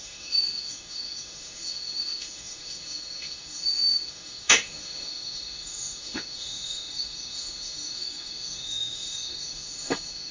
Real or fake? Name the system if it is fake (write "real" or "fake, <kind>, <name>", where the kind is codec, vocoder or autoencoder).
fake, autoencoder, DAC-VAE